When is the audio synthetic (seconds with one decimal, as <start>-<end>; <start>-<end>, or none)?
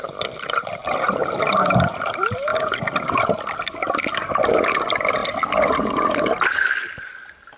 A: none